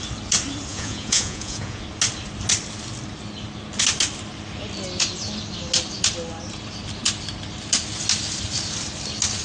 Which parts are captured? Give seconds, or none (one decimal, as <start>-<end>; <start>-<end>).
0.0-0.7; 1.8-9.4